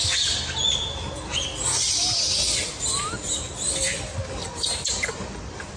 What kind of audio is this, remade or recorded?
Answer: recorded